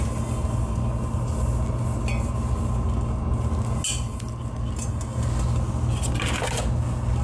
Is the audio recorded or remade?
recorded